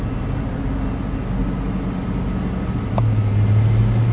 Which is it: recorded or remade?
recorded